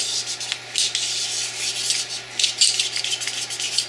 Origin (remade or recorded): recorded